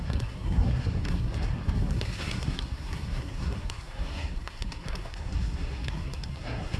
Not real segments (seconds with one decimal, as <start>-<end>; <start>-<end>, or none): 0.0-6.8